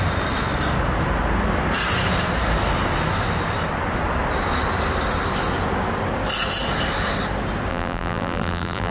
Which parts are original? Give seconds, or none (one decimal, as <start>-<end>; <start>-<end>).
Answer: 0.0-7.7